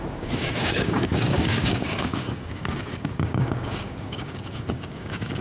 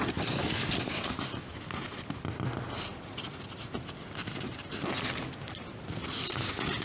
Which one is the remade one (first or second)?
first